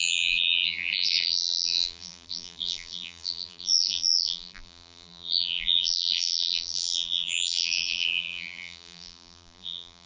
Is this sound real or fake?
fake